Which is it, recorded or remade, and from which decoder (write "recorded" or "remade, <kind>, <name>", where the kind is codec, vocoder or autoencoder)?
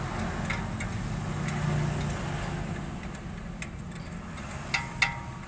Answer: recorded